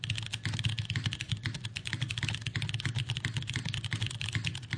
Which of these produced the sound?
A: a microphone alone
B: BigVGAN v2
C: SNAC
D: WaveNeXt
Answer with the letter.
A